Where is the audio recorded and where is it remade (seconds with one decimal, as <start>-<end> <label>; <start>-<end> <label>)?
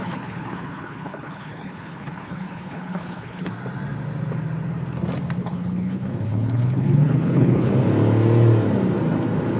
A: 0.0-3.5 remade; 3.5-5.4 recorded; 5.4-7.7 remade; 7.7-9.6 recorded